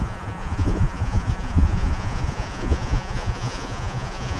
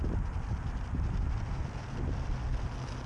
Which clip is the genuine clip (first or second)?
second